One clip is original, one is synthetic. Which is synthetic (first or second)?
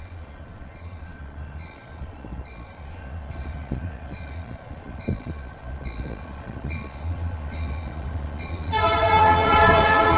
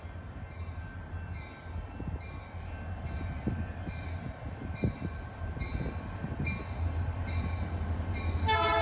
first